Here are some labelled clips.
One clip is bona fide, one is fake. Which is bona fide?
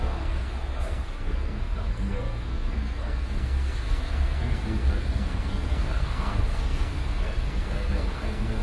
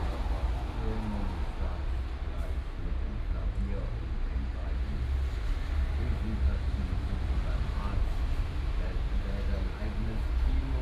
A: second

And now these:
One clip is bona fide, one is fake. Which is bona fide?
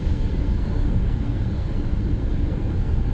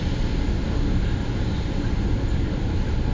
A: second